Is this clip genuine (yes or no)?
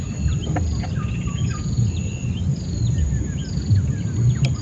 yes